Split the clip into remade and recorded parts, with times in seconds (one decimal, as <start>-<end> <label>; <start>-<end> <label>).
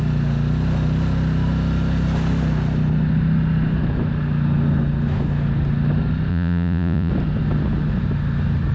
0.0-6.3 recorded; 6.3-7.1 remade; 7.1-8.7 recorded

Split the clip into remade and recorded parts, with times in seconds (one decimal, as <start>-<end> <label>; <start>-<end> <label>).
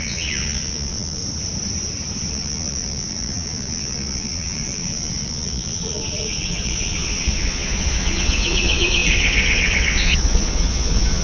0.0-1.2 remade; 1.2-2.3 recorded; 2.3-11.2 remade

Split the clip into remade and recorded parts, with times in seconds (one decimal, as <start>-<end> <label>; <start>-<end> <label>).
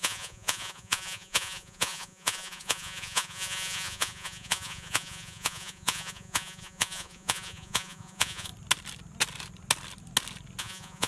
0.0-8.5 remade; 8.5-10.6 recorded; 10.6-11.1 remade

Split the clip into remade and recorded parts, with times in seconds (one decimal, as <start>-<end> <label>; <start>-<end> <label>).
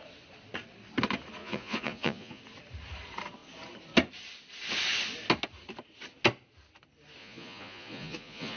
0.0-1.4 recorded; 1.4-2.4 remade; 2.4-7.2 recorded; 7.2-8.6 remade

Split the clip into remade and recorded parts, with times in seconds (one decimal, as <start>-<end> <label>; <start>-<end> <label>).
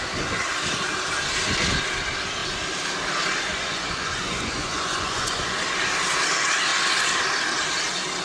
0.0-3.5 recorded; 3.5-5.5 remade; 5.5-8.2 recorded